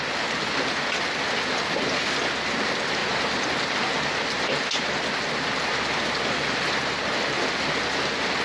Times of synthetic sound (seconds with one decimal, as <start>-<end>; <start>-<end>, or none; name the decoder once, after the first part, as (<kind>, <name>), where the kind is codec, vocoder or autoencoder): none